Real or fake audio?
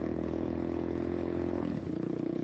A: fake